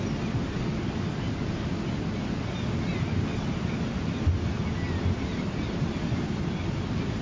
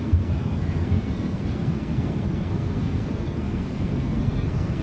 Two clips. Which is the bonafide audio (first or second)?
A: first